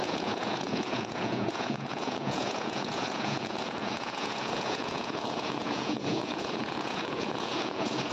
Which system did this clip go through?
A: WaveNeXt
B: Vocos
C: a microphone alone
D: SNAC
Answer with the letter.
B